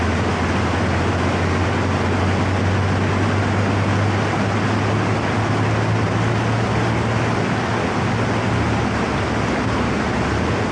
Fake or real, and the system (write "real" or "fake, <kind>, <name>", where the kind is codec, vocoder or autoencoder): real